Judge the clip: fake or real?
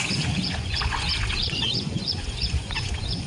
fake